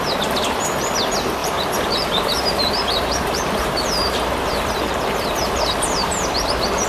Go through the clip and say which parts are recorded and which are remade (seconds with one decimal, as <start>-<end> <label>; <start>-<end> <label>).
0.0-1.4 recorded; 1.4-4.9 remade; 4.9-6.0 recorded; 6.0-6.9 remade

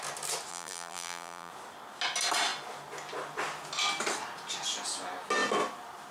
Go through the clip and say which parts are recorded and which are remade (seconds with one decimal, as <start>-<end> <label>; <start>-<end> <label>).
0.0-0.5 recorded; 0.5-1.5 remade; 1.5-6.1 recorded

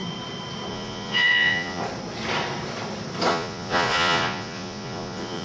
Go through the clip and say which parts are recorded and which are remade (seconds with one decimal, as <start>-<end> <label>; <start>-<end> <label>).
0.0-0.7 recorded; 0.7-1.8 remade; 1.8-3.3 recorded; 3.3-5.4 remade

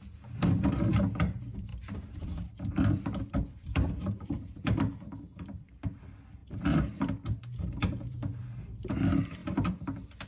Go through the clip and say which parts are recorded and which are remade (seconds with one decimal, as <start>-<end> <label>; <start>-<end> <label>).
0.0-10.3 remade

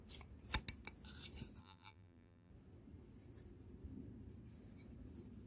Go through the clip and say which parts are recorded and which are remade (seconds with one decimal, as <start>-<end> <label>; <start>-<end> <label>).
0.0-1.6 recorded; 1.6-2.5 remade; 2.5-5.5 recorded